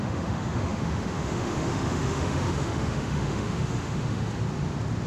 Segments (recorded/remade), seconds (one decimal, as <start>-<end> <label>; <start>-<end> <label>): 0.0-4.3 remade; 4.3-5.1 recorded